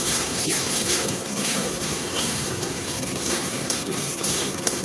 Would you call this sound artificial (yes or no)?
yes